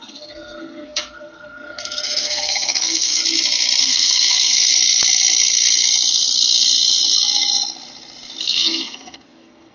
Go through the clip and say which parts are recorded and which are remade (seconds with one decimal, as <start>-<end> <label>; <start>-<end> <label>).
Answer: 0.0-3.2 remade; 3.2-3.8 recorded; 3.8-4.7 remade; 4.7-8.4 recorded; 8.4-9.7 remade